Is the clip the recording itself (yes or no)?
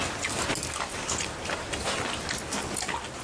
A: yes